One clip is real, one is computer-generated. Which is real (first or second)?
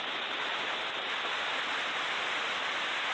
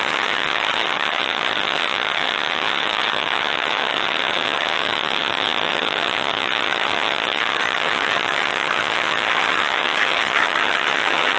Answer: first